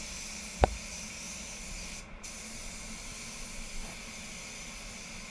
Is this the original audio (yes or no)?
yes